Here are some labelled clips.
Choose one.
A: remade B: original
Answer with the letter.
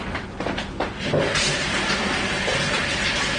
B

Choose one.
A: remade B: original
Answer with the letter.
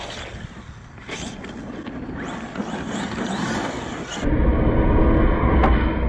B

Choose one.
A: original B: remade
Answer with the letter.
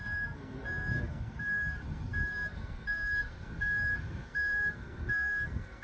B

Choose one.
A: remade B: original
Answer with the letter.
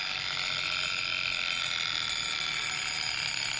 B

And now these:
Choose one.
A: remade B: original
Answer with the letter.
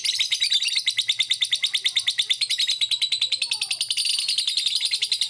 B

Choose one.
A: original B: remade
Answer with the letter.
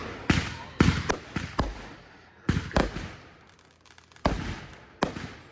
A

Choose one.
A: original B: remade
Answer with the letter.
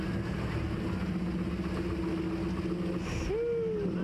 A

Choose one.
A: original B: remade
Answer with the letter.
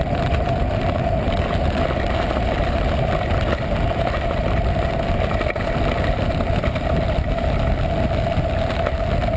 A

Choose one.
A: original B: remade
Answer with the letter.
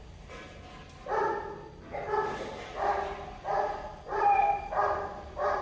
A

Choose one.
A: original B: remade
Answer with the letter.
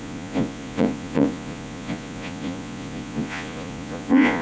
B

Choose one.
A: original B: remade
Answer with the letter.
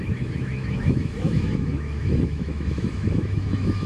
B